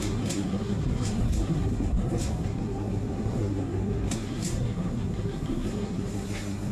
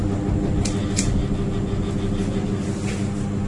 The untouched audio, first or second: second